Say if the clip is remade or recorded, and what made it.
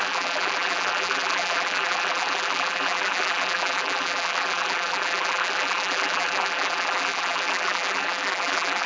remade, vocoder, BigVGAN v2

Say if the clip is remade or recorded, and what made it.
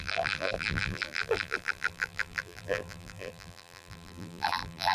remade, vocoder, BigVGAN v2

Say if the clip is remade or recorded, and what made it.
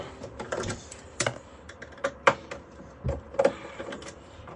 remade, vocoder, BigVGAN v2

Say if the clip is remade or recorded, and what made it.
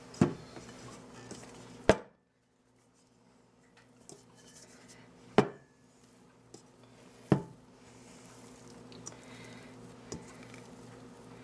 recorded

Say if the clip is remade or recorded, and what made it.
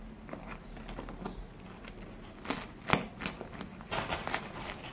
recorded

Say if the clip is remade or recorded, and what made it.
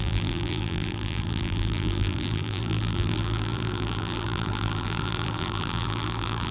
remade, vocoder, BigVGAN v2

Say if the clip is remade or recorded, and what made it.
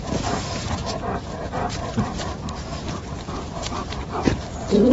remade, vocoder, BigVGAN v2